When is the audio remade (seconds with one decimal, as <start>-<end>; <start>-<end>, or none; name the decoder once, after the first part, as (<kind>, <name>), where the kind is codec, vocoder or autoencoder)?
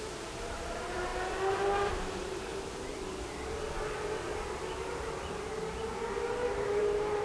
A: 0.0-1.1 (vocoder, BigVGAN v2); 1.9-2.5; 6.8-7.2